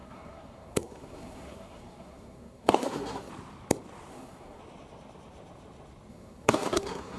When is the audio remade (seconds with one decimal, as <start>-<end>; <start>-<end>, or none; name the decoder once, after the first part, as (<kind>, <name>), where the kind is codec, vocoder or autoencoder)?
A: 0.0-3.3 (codec, SNAC); 4.1-4.6; 6.1-7.2